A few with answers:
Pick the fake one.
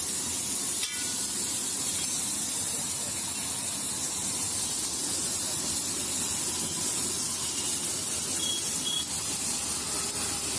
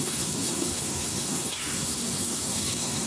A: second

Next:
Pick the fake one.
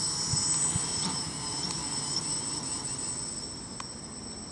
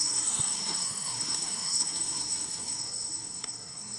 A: second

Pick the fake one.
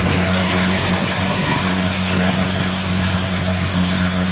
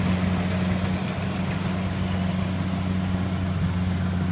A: first